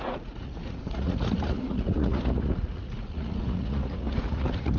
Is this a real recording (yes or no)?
no